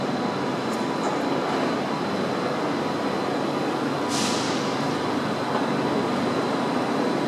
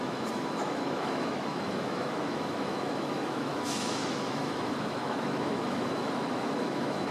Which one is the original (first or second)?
first